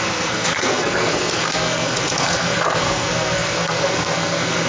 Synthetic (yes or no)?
yes